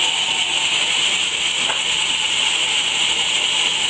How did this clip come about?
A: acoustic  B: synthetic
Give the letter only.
B